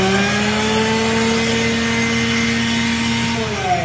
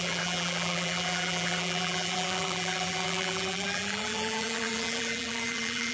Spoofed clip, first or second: second